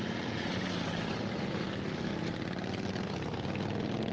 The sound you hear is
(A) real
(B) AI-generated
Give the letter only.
A